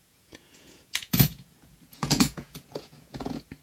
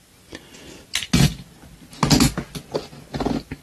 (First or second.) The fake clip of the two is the first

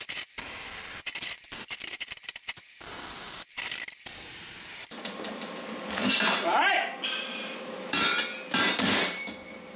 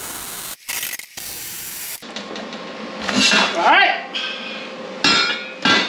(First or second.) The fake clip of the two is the first